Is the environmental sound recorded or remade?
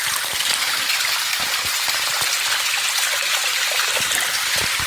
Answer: remade